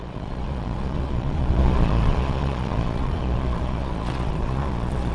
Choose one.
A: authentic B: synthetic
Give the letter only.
B